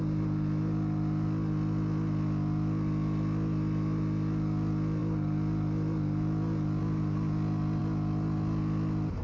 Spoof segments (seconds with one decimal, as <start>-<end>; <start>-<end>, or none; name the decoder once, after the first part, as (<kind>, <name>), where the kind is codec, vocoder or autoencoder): none